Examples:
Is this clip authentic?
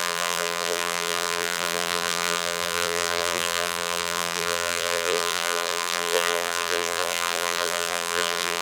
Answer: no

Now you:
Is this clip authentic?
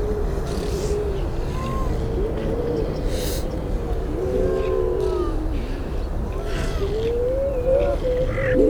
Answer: yes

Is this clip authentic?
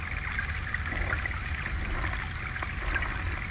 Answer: yes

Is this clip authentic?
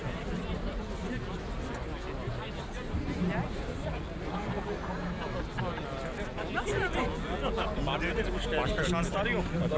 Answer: yes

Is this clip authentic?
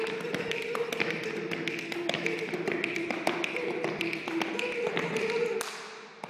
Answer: yes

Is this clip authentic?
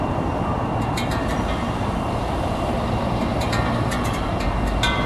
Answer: no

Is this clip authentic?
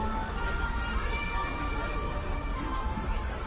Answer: no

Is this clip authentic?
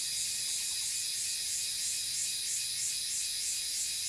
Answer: yes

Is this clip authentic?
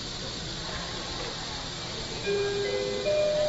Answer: yes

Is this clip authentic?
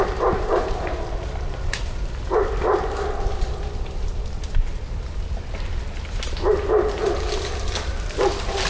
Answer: no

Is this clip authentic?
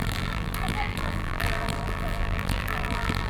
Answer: no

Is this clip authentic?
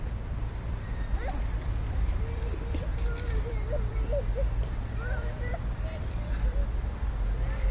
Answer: no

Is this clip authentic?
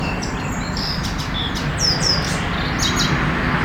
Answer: yes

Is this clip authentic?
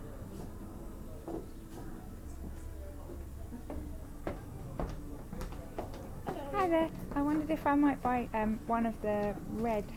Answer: yes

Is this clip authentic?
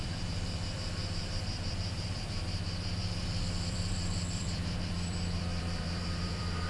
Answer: no